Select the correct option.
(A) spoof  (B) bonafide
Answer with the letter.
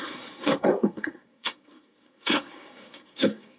A